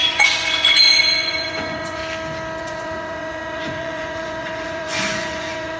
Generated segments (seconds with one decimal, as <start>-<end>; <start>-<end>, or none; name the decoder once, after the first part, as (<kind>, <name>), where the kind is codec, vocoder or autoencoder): 0.0-2.0 (vocoder, Vocos); 2.6-5.8